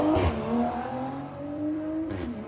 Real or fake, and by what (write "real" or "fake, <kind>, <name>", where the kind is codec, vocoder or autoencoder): fake, vocoder, BigVGAN v2